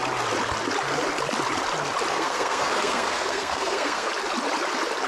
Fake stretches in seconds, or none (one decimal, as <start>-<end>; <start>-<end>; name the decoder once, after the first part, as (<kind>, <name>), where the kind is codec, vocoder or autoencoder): 2.1-4.1 (codec, SNAC)